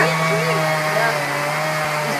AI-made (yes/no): no